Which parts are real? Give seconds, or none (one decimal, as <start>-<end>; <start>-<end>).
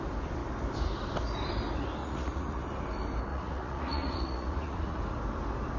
0.0-2.0; 2.6-3.3; 5.0-5.8